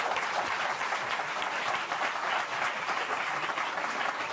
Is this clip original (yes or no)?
yes